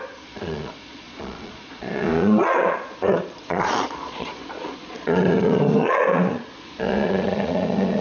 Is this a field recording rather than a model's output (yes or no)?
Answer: no